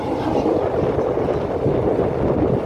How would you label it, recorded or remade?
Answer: recorded